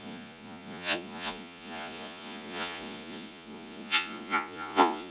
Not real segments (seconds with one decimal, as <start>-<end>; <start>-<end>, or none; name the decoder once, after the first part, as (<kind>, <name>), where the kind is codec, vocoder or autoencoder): 0.0-5.1 (vocoder, Vocos)